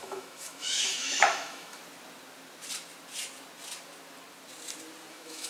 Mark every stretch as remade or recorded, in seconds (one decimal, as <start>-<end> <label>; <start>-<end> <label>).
0.0-1.8 remade; 1.8-5.1 recorded; 5.1-5.5 remade